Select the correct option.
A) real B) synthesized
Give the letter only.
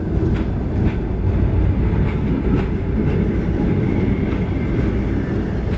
A